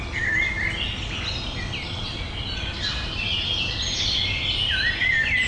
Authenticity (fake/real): real